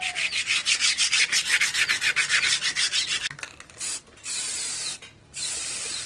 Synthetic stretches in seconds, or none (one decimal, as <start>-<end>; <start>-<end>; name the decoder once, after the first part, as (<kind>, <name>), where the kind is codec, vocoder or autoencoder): none